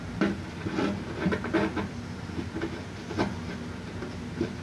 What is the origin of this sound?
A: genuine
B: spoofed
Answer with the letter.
A